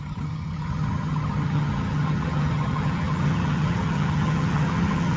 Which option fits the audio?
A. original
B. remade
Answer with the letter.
B